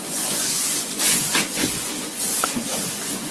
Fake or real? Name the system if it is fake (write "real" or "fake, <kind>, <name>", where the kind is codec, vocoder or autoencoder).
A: fake, vocoder, Vocos